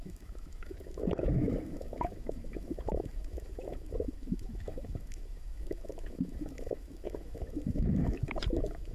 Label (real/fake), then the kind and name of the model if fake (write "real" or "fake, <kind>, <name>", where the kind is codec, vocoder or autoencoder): fake, autoencoder, DAC-VAE